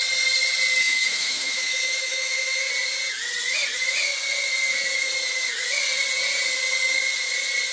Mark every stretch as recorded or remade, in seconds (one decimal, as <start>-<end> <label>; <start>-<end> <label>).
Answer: 0.0-0.8 recorded; 0.8-2.7 remade; 2.7-7.7 recorded